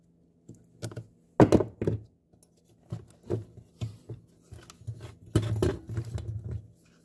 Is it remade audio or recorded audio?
recorded